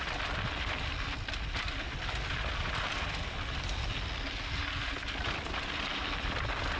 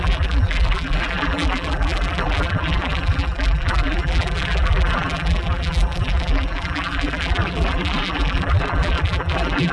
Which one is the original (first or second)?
first